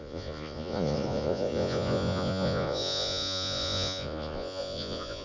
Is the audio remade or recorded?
remade